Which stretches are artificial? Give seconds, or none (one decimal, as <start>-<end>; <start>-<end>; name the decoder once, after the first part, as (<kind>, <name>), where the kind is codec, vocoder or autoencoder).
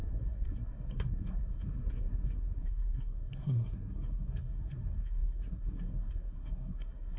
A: 0.0-7.2 (codec, SNAC)